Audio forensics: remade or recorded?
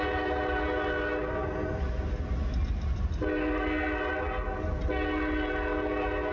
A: recorded